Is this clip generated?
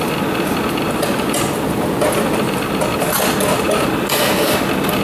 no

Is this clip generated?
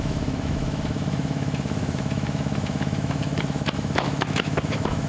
yes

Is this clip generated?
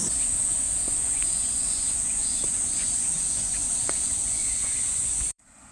yes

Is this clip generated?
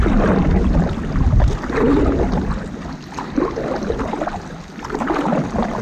no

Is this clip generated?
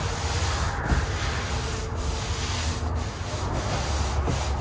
no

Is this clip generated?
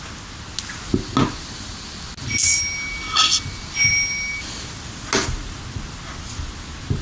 no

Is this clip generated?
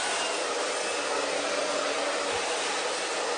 no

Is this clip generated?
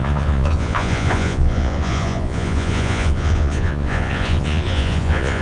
yes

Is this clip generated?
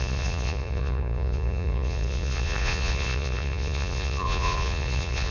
yes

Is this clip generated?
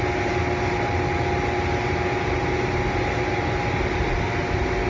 no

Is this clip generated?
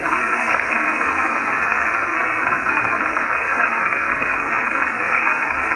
yes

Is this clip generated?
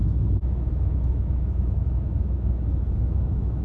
yes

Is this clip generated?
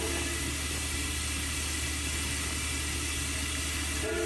no